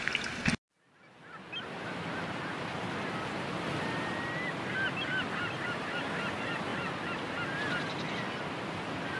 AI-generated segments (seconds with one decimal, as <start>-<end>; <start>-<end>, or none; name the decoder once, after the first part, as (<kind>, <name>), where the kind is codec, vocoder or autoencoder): none